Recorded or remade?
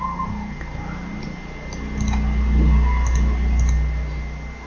recorded